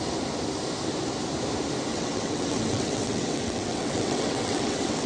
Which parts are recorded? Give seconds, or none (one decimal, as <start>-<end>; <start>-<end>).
0.0-1.9